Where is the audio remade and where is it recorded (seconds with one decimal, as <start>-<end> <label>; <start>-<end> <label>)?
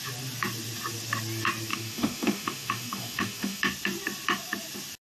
0.0-1.7 recorded; 1.7-3.6 remade; 3.6-5.1 recorded